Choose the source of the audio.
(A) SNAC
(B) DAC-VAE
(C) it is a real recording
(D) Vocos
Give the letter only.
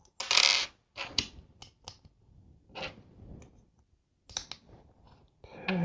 C